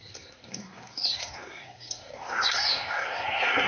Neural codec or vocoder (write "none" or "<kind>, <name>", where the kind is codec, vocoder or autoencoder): codec, SNAC